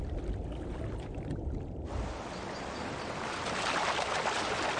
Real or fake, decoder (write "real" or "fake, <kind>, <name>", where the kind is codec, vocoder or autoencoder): real